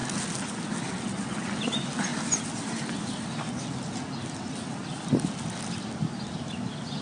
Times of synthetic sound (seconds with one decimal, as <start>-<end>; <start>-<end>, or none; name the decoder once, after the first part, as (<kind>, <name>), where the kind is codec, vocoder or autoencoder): none